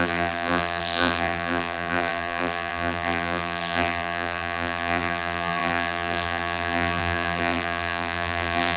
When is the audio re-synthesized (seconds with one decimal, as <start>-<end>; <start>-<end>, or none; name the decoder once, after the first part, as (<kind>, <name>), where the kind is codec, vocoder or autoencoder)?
0.0-8.8 (vocoder, BigVGAN v2)